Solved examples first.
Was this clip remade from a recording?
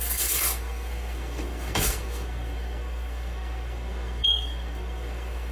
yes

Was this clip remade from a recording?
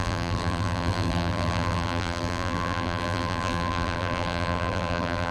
yes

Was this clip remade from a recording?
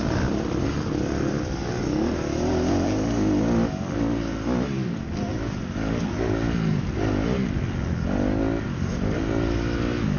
no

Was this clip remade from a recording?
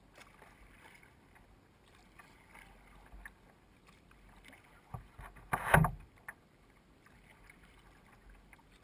no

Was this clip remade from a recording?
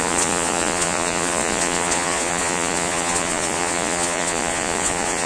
yes